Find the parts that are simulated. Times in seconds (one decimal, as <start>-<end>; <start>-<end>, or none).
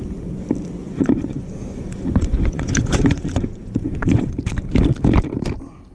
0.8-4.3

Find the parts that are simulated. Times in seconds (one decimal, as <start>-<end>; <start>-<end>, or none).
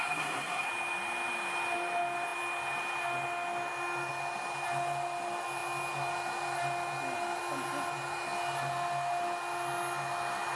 0.0-0.7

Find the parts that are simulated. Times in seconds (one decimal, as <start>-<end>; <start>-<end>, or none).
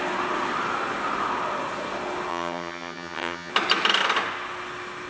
2.3-3.5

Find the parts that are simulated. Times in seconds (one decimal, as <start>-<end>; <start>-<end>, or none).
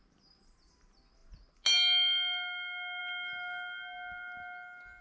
none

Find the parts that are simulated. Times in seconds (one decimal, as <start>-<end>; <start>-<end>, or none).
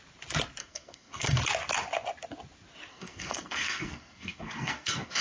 0.6-1.4; 2.9-5.2